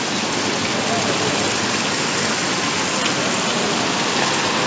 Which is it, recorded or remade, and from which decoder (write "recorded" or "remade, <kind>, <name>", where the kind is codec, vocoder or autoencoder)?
recorded